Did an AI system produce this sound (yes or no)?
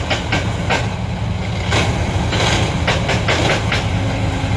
no